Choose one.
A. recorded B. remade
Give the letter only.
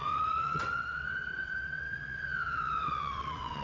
B